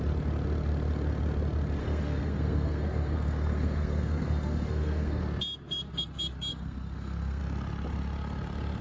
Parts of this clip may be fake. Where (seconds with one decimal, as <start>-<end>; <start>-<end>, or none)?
1.8-5.2; 6.5-7.4